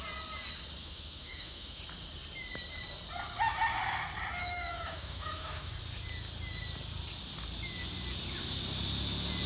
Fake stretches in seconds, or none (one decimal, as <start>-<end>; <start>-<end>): 0.8-1.8; 4.4-5.7